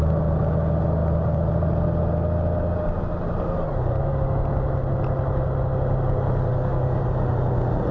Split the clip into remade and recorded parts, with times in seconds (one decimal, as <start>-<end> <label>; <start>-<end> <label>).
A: 0.0-6.5 recorded; 6.5-7.0 remade; 7.0-7.9 recorded